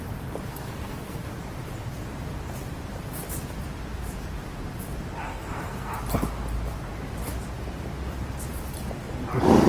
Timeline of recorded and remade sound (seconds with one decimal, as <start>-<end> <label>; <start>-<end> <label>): 0.0-0.5 recorded; 0.5-1.2 remade; 1.2-5.3 recorded; 5.3-6.0 remade; 6.0-9.7 recorded